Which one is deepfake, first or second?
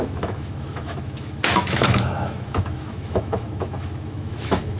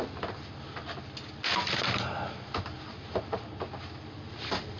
first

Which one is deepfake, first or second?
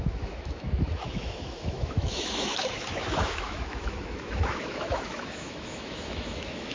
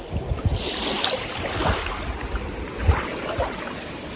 first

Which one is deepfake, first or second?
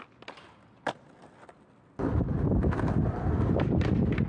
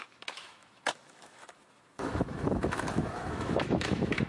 second